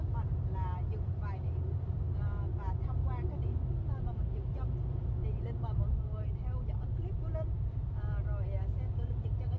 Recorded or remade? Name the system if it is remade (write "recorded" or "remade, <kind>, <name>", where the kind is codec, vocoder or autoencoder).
recorded